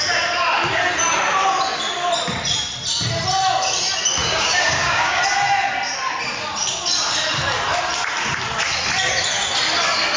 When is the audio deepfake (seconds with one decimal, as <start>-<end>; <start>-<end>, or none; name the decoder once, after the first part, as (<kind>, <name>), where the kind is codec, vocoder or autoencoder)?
4.2-5.2 (codec, DAC)

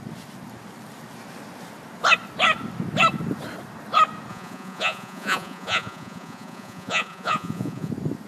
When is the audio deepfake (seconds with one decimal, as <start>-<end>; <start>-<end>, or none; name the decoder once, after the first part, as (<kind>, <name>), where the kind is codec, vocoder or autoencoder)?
4.3-7.9 (vocoder, Vocos)

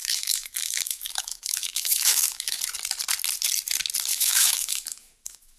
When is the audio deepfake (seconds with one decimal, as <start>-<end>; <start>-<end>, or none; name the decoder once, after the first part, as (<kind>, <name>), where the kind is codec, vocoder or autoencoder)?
0.0-2.6 (autoencoder, DAC-VAE); 4.1-5.6

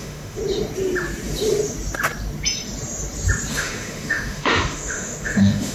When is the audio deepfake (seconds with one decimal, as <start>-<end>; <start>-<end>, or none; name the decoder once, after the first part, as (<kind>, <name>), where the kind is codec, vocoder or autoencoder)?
0.0-0.4 (autoencoder, DAC-VAE); 3.5-5.7